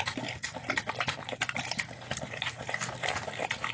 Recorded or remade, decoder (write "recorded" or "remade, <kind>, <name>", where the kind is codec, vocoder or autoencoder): recorded